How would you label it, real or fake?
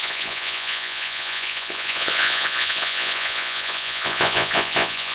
fake